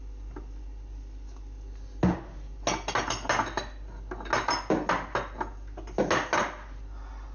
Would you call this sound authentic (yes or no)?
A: yes